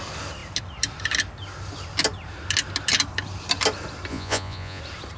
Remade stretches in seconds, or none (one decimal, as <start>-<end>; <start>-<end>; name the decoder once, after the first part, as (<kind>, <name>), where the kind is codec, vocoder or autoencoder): 4.1-4.8 (vocoder, Vocos)